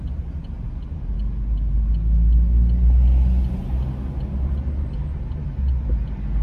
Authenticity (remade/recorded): recorded